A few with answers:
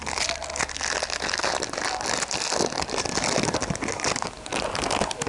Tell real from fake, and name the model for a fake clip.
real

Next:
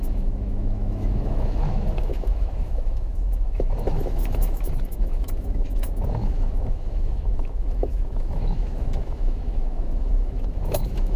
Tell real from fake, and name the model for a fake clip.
fake, autoencoder, DAC-VAE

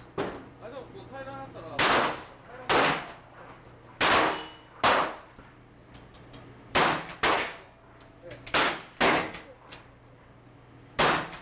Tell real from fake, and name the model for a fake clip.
real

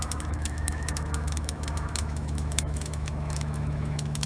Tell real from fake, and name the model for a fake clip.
fake, autoencoder, DAC-VAE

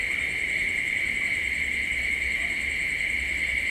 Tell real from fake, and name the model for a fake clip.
real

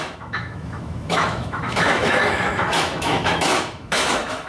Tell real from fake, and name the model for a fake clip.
fake, autoencoder, DAC-VAE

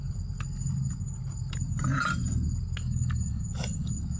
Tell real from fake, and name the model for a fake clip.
real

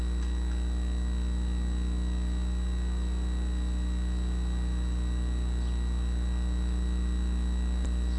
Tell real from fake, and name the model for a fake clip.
real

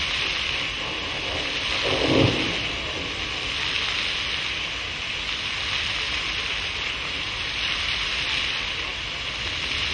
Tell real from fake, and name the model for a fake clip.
real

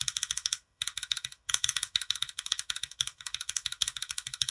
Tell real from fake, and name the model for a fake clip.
fake, autoencoder, DAC-VAE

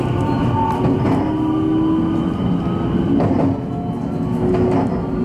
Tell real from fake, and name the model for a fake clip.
real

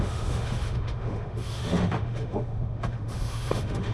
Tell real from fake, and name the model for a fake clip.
fake, autoencoder, DAC-VAE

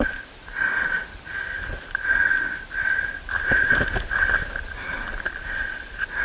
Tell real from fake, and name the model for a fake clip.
real